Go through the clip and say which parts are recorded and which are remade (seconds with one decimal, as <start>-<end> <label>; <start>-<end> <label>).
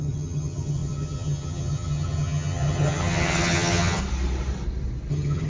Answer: 0.0-4.0 remade; 4.0-5.1 recorded; 5.1-5.5 remade